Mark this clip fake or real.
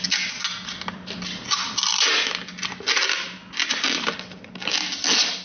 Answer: real